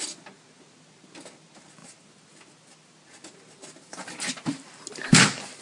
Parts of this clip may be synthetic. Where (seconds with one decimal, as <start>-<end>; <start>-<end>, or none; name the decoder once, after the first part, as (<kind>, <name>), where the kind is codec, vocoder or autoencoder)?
none